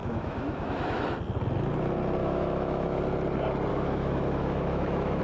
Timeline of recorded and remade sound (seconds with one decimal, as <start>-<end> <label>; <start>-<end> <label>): 0.0-1.0 remade; 1.0-2.2 recorded; 2.2-3.0 remade; 3.0-3.7 recorded; 3.7-5.2 remade